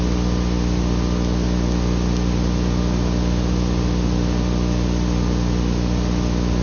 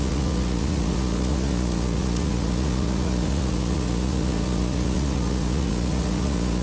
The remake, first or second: second